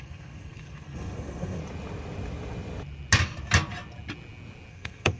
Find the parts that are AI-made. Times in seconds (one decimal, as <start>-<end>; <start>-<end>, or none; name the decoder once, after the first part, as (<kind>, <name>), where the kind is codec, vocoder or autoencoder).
0.0-1.6 (codec, SNAC); 4.7-5.2